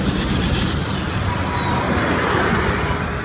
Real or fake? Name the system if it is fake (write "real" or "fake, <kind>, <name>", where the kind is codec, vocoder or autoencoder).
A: real